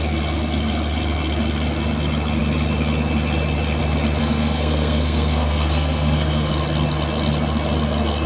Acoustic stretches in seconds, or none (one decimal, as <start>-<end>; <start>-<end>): 0.0-4.2; 6.5-8.3